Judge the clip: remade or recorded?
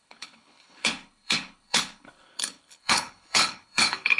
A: remade